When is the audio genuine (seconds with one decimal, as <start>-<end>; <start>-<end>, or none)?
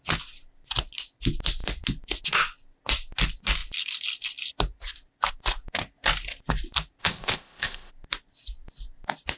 0.0-7.0; 7.9-9.4